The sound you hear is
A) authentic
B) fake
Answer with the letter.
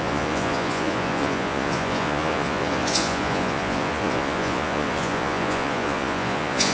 B